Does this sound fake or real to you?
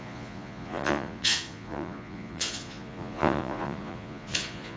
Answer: fake